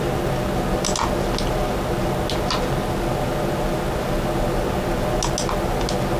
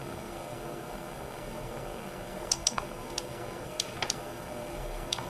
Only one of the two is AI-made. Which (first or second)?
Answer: second